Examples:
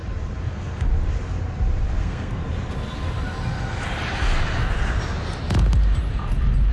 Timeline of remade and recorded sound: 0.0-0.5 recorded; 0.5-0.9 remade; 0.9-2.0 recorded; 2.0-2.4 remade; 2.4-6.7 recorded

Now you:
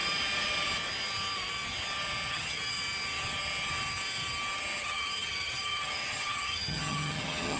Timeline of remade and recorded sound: 0.0-2.3 recorded; 2.3-2.8 remade; 2.8-4.8 recorded; 4.8-7.6 remade

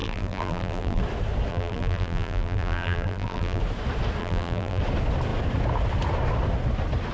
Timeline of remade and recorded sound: 0.0-1.0 remade; 1.0-1.5 recorded; 1.5-3.6 remade; 3.6-4.2 recorded; 4.2-4.8 remade; 4.8-7.1 recorded

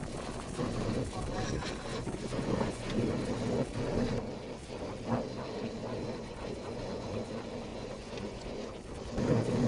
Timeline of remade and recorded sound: 0.0-1.9 recorded; 1.9-2.9 remade; 2.9-5.8 recorded; 5.8-7.3 remade; 7.3-7.7 recorded; 7.7-8.7 remade; 8.7-9.7 recorded

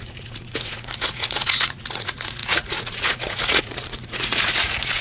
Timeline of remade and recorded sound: 0.0-5.0 remade

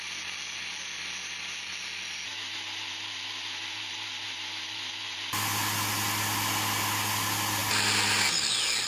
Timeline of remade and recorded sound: 0.0-8.9 recorded

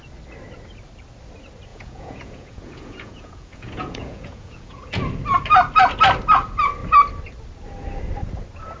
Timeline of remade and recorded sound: 0.0-1.7 recorded; 1.7-5.0 remade; 5.0-8.8 recorded